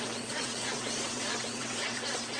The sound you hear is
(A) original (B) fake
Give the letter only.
B